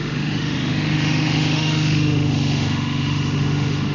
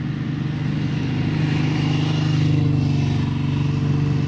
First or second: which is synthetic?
first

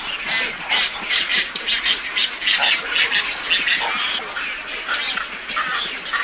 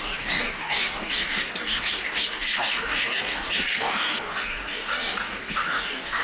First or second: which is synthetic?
second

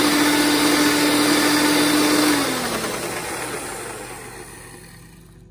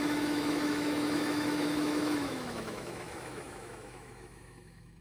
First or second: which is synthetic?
second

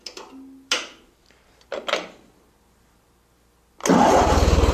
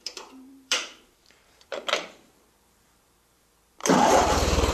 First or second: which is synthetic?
second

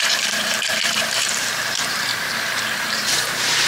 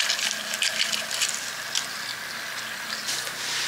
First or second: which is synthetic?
first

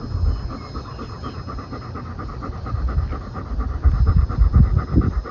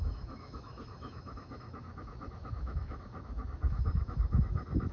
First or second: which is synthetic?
second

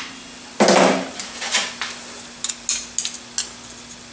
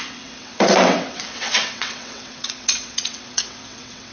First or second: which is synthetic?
second